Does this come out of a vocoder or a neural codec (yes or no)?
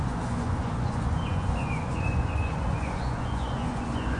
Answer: yes